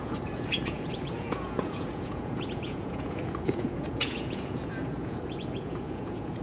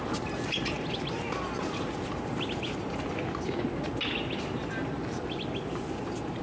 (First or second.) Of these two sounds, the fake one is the first